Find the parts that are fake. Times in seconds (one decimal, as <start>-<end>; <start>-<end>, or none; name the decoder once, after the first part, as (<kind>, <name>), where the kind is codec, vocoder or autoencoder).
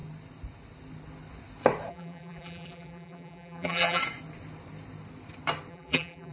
1.9-4.0 (vocoder, BigVGAN v2); 5.7-6.3